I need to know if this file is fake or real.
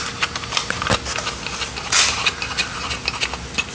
real